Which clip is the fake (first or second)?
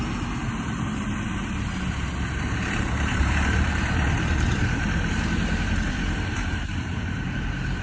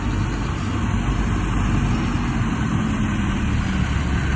first